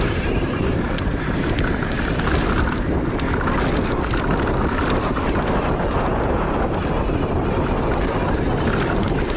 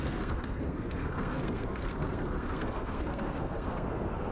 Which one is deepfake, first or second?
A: second